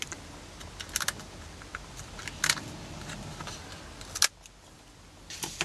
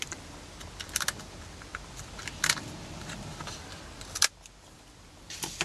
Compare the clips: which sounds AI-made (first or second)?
second